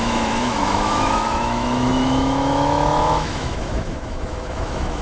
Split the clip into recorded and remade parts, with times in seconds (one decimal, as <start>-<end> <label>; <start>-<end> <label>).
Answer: 0.0-5.0 remade